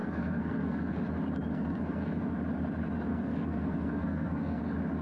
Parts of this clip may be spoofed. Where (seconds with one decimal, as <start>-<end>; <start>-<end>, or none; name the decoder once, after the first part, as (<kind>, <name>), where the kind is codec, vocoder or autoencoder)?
0.0-1.0 (codec, SNAC); 1.5-2.3; 3.1-4.6